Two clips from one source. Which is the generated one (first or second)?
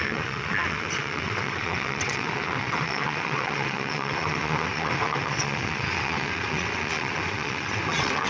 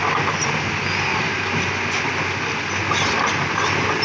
first